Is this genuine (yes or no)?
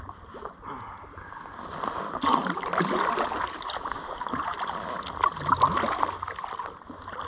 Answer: yes